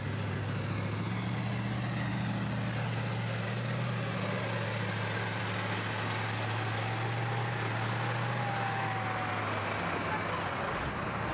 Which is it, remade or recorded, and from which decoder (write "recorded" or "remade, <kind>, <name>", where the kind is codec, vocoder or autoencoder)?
recorded